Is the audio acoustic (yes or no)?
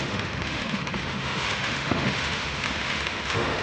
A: no